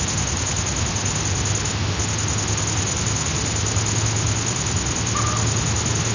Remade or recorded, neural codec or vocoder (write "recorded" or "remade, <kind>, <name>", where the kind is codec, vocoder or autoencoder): recorded